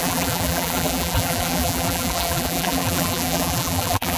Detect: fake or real fake